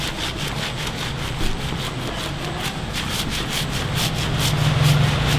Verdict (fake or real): real